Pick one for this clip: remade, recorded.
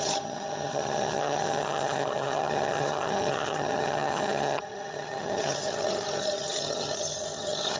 remade